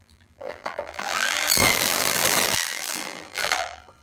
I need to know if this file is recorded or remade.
remade